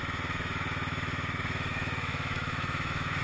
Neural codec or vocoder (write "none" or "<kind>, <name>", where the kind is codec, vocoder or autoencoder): autoencoder, DAC-VAE